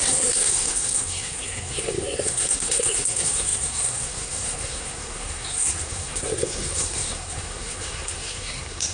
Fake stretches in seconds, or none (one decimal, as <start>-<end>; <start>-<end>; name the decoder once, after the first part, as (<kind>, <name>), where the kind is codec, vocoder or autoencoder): 0.0-8.9 (codec, SNAC)